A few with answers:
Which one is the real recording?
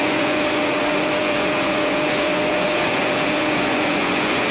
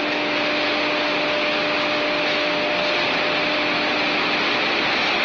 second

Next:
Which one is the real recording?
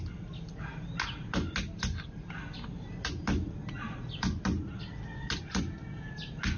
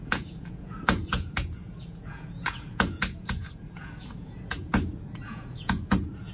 first